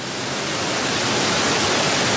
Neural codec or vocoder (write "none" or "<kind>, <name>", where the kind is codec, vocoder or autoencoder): none